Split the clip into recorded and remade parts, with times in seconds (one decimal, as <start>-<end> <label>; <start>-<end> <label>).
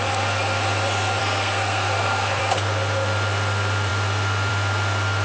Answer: 0.0-1.2 recorded; 1.2-2.4 remade; 2.4-5.2 recorded